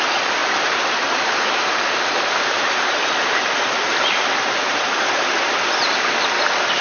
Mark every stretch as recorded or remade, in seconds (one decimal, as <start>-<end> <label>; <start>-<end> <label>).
0.0-0.4 recorded; 0.4-2.8 remade; 2.8-6.8 recorded